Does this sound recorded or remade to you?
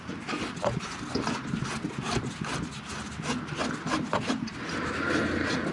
recorded